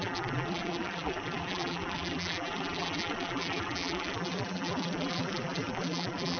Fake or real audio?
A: fake